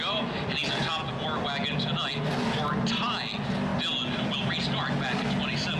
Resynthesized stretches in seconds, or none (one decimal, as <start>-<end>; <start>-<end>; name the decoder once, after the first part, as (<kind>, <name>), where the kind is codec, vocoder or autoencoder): none